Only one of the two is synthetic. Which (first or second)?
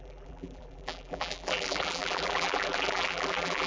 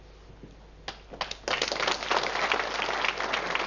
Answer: first